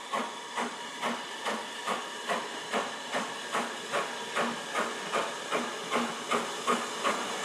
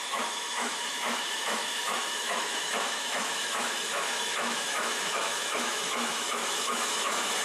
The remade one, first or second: second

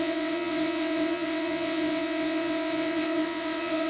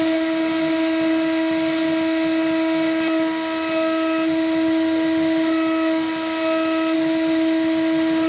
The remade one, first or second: first